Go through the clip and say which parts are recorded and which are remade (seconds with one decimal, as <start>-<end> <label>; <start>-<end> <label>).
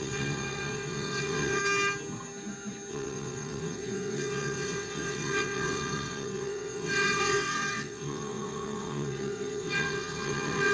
0.0-1.6 remade; 1.6-2.9 recorded; 2.9-10.7 remade